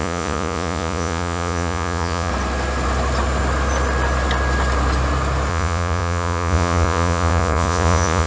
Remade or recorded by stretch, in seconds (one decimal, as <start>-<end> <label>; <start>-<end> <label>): 0.0-2.3 remade; 2.3-5.5 recorded; 5.5-8.3 remade